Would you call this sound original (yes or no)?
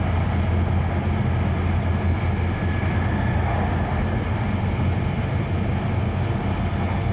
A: yes